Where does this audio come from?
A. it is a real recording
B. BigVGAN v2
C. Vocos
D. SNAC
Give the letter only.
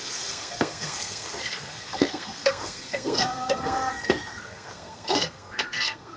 D